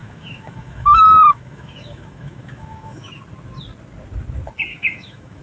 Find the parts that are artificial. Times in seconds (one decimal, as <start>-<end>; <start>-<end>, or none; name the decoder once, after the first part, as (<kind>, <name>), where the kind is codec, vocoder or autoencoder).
0.0-3.2 (autoencoder, DAC-VAE); 4.7-5.4

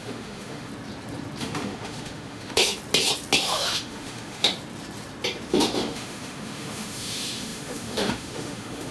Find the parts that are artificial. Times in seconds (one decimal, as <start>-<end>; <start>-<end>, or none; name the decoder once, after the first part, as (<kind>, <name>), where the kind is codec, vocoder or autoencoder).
0.0-0.7 (autoencoder, DAC-VAE); 1.4-2.8; 3.4-4.5; 5.5-8.9

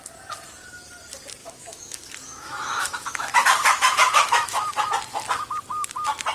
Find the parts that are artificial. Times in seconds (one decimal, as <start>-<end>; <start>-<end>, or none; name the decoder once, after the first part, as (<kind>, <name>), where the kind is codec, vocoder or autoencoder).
1.4-4.9 (autoencoder, DAC-VAE)

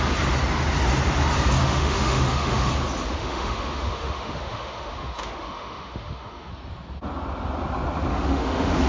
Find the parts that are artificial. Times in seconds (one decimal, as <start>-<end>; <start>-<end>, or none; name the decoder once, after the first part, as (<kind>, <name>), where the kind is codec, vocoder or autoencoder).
1.6-2.7 (autoencoder, DAC-VAE); 3.2-6.5; 8.1-8.9

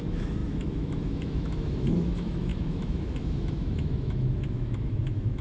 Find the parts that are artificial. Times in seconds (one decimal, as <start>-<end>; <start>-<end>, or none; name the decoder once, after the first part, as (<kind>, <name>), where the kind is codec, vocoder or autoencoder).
0.0-5.4 (autoencoder, DAC-VAE)

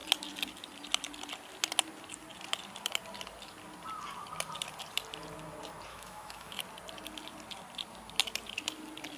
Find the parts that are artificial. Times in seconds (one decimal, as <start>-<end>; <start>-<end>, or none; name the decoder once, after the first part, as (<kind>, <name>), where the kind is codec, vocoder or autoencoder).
5.9-6.6 (autoencoder, DAC-VAE)